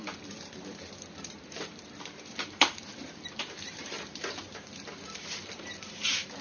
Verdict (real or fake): fake